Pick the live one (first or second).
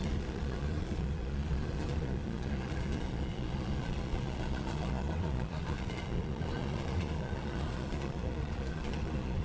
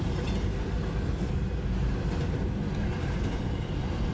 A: second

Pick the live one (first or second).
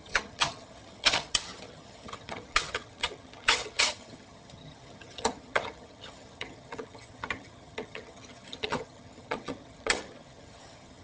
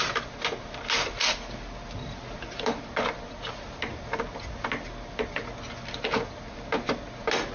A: second